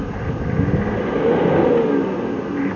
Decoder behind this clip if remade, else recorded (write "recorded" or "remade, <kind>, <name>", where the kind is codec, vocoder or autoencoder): recorded